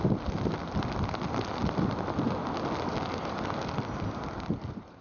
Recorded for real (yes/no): yes